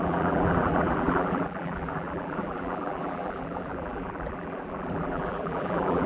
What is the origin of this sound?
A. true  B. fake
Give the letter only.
B